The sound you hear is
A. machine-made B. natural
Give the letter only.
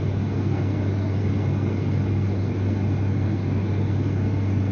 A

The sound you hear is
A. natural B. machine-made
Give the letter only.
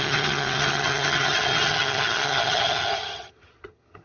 B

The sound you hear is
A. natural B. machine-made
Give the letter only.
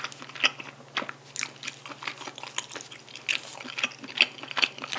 A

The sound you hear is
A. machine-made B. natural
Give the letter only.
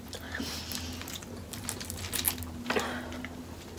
B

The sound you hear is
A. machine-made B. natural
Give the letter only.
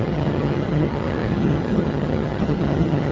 A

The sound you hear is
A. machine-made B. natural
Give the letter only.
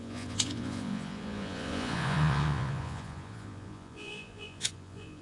A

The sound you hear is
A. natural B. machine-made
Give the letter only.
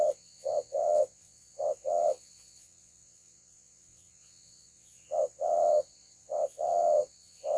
B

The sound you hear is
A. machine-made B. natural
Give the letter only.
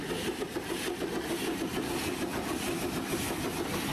B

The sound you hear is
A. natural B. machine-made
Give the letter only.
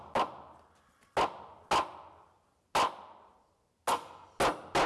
A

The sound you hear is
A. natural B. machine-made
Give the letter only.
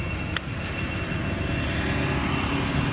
A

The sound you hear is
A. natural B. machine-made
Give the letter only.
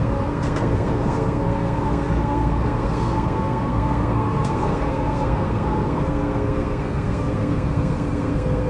B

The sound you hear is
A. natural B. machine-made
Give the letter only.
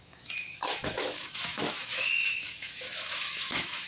B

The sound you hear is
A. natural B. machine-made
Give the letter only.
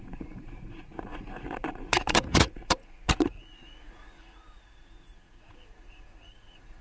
B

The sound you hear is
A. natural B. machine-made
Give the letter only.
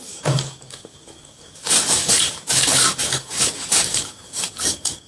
B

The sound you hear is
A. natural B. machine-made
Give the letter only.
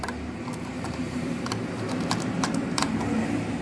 B